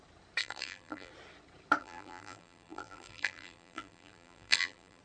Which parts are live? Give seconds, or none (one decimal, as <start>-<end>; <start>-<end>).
0.0-0.4; 1.1-1.8